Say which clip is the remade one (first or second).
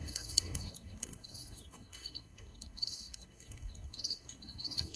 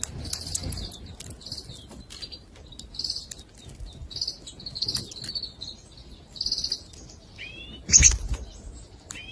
first